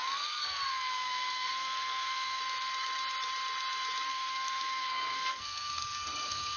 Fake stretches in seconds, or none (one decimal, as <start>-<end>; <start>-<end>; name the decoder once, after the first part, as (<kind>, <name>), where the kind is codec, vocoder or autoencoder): 0.0-2.4 (codec, SNAC); 4.1-6.6